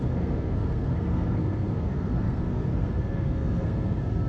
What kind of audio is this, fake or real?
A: fake